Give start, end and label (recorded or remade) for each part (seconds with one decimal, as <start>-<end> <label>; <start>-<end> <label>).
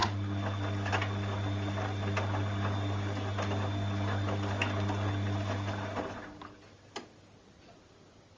0.0-8.4 recorded